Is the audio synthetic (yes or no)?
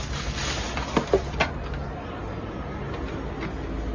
no